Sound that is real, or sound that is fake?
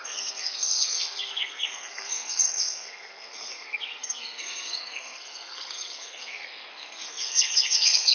fake